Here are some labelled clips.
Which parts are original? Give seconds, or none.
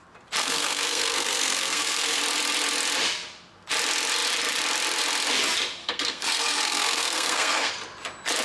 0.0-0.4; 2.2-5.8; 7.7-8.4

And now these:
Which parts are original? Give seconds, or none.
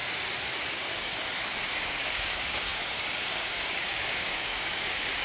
0.0-0.7; 1.1-1.6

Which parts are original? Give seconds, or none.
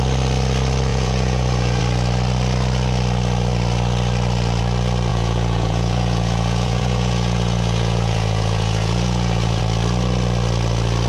0.0-0.9; 1.8-5.1; 9.6-11.1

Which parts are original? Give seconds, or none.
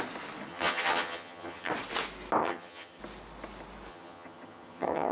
0.0-0.5; 1.7-2.4; 3.0-3.9